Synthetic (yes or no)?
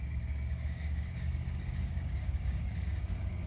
yes